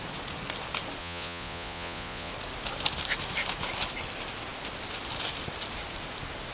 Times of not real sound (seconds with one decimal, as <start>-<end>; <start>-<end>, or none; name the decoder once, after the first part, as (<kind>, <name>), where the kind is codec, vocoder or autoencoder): 1.0-2.3 (vocoder, Vocos)